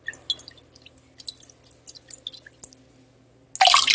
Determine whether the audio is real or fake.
real